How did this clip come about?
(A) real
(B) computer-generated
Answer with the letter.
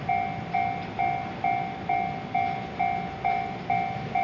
A